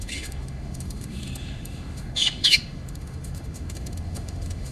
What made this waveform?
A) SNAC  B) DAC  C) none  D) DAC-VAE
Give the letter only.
D